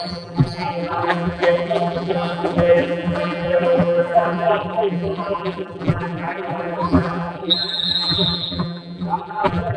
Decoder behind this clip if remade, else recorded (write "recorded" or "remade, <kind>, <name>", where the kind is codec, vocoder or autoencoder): remade, vocoder, BigVGAN v2